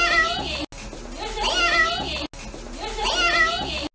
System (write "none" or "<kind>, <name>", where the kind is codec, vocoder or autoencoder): none